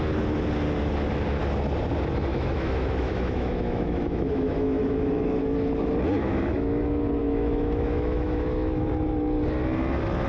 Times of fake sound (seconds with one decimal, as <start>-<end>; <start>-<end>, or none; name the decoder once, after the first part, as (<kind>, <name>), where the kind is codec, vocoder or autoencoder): 2.3-5.4 (autoencoder, DAC-VAE); 6.2-6.8; 7.2-8.9